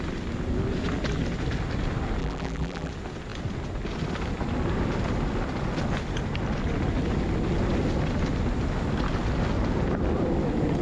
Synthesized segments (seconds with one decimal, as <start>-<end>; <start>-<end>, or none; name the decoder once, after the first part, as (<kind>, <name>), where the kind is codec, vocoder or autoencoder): 2.2-2.9 (vocoder, BigVGAN v2)